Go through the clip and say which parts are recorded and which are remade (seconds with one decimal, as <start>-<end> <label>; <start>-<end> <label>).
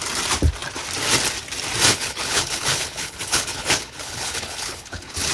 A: 0.0-1.9 recorded; 1.9-5.3 remade